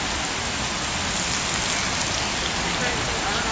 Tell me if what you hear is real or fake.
real